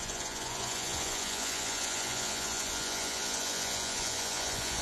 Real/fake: fake